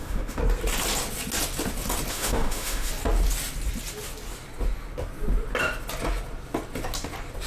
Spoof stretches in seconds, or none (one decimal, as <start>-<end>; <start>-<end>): 0.0-0.4; 2.1-2.9